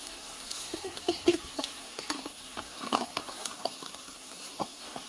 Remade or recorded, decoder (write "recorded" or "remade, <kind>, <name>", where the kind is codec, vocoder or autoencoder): remade, codec, SNAC